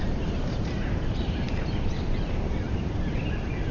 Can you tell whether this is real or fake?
fake